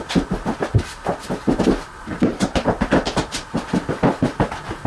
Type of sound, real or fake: real